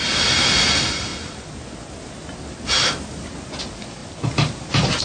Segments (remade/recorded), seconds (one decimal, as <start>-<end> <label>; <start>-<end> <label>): 0.0-5.0 recorded